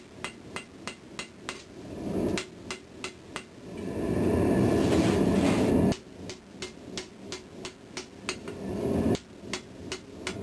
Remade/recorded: recorded